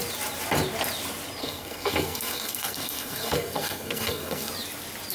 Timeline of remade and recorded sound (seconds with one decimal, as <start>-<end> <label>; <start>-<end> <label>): 0.0-1.4 recorded; 1.4-4.5 remade; 4.5-5.1 recorded